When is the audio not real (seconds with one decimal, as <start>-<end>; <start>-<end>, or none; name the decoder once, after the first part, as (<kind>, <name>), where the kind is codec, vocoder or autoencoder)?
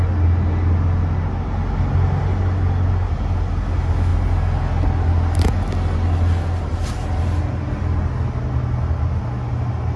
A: none